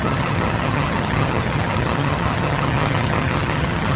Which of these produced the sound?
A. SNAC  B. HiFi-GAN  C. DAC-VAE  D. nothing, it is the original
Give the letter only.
B